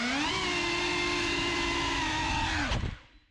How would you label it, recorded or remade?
recorded